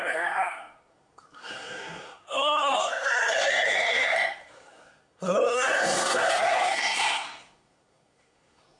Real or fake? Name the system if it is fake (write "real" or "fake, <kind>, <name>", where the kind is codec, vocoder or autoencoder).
fake, codec, SNAC